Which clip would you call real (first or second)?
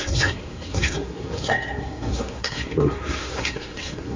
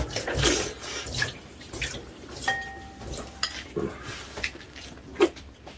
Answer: second